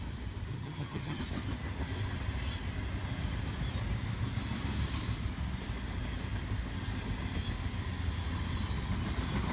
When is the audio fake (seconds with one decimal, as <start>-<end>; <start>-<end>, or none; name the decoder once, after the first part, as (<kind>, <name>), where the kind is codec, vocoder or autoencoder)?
0.5-1.2 (vocoder, HiFi-GAN)